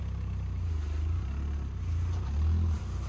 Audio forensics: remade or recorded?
recorded